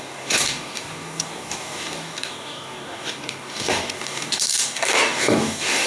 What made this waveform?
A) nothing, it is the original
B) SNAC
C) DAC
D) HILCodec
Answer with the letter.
C